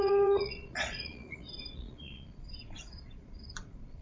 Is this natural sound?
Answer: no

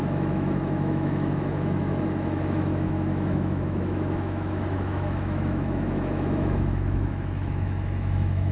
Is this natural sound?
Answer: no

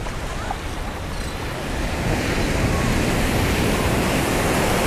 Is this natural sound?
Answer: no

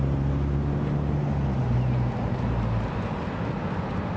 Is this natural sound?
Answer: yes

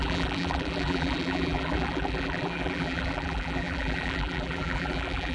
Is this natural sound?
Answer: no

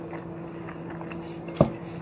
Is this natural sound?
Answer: yes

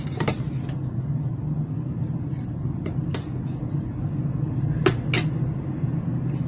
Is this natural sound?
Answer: yes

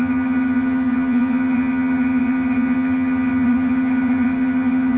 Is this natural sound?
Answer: no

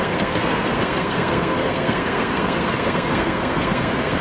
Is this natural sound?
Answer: no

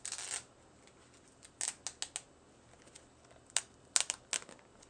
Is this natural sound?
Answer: yes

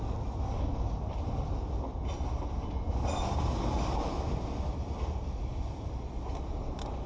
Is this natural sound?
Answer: yes